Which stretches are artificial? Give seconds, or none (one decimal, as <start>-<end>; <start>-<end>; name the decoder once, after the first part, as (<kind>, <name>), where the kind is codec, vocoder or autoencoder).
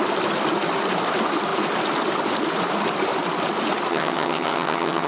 3.9-5.1 (vocoder, HiFi-GAN)